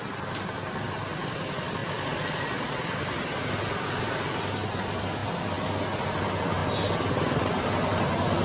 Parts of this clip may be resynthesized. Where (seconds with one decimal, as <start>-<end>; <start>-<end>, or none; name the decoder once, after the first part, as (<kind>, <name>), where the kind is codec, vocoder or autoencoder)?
none